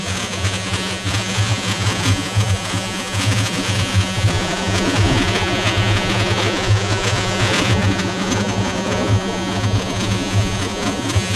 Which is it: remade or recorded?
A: remade